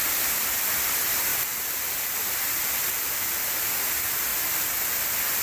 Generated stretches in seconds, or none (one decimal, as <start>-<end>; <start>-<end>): 1.3-3.8